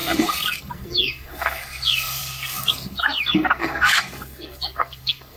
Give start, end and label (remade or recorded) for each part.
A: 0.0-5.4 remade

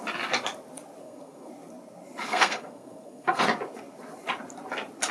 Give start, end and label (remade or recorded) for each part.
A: 0.0-1.0 recorded; 1.0-1.5 remade; 1.5-2.3 recorded; 2.3-3.4 remade; 3.4-5.1 recorded

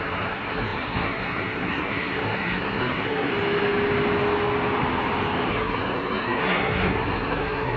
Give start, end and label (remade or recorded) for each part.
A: 0.0-3.3 remade; 3.3-5.5 recorded; 5.5-7.8 remade

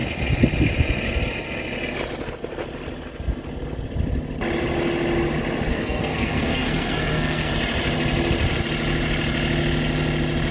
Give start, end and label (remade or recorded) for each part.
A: 0.0-5.7 recorded; 5.7-7.5 remade; 7.5-10.5 recorded

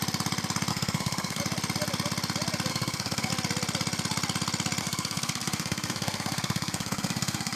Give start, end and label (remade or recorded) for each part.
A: 0.0-0.7 recorded; 0.7-1.4 remade; 1.4-2.7 recorded; 2.7-3.3 remade; 3.3-4.8 recorded; 4.8-7.6 remade